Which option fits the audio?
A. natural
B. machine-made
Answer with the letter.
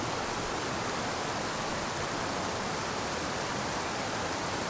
A